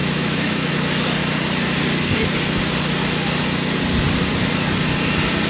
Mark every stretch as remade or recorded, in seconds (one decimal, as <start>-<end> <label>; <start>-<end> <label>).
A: 0.0-0.7 remade; 0.7-5.5 recorded